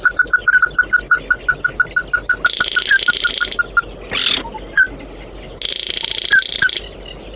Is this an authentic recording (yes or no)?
yes